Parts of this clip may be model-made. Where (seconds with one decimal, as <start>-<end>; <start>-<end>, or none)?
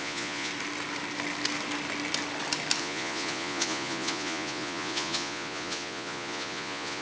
0.0-0.5; 2.8-7.0